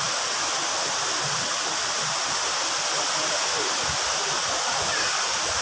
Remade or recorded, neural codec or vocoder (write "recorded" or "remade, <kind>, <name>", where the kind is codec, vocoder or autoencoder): recorded